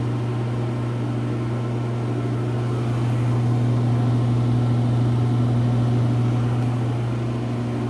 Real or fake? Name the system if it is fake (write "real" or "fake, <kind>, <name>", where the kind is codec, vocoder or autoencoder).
real